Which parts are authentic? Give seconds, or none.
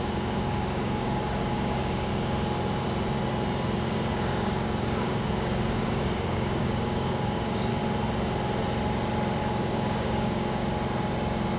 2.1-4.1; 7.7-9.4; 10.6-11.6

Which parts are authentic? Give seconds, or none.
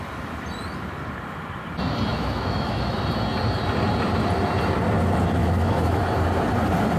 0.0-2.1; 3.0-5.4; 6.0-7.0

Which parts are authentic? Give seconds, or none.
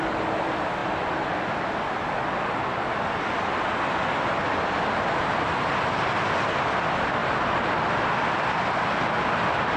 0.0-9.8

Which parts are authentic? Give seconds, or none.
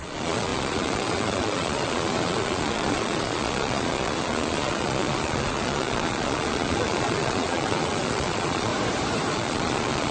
8.7-9.3